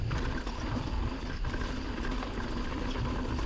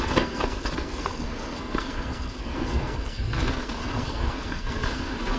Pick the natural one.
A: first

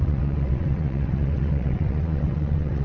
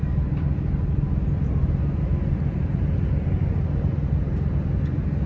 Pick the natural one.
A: second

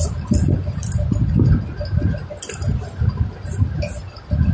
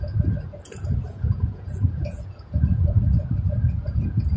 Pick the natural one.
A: first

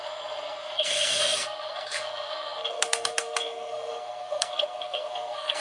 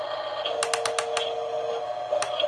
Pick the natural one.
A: second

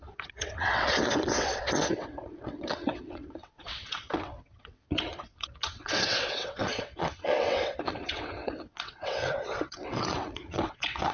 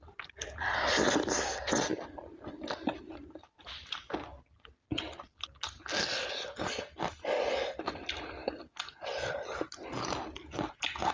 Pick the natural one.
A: second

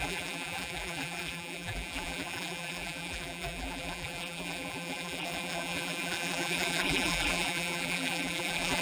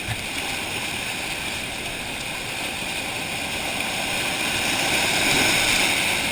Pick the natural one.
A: second